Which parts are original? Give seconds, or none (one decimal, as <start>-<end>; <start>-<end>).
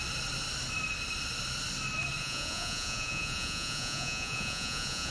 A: 0.0-2.2